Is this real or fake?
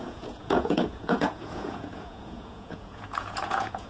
fake